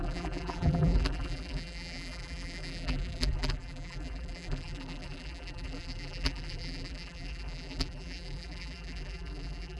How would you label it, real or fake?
fake